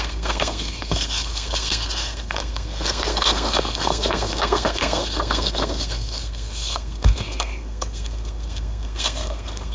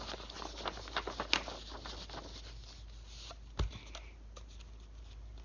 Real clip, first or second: second